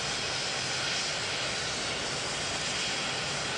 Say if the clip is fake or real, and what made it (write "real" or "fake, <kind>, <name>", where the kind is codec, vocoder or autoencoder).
real